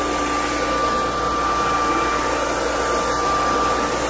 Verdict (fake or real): real